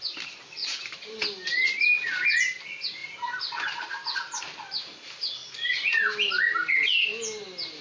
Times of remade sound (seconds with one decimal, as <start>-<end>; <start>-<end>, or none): 0.6-1.2; 3.0-4.4